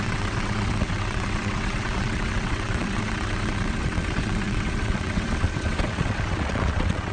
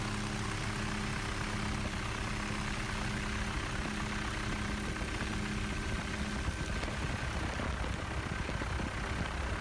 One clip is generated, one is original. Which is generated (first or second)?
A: first